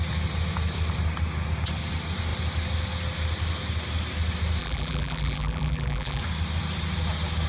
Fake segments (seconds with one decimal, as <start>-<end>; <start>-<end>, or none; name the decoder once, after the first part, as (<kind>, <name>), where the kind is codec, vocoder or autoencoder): 4.6-6.2 (vocoder, BigVGAN v2)